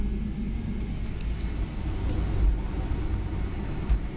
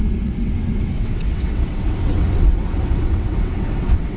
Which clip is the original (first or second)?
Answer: first